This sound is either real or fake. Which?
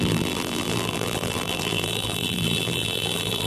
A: fake